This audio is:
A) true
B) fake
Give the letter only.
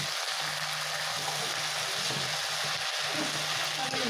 A